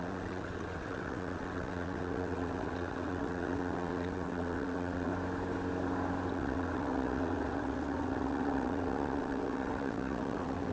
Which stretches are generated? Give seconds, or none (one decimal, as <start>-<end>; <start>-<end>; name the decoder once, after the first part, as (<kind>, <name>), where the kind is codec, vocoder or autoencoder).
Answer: 0.0-5.1 (vocoder, WaveNeXt); 6.3-10.7